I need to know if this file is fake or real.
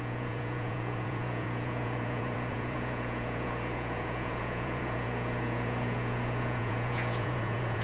fake